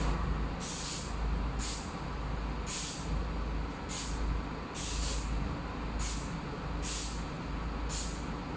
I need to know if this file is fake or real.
real